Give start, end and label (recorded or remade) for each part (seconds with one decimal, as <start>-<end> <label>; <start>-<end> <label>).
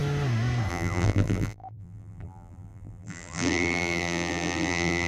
0.0-0.7 recorded; 0.7-5.1 remade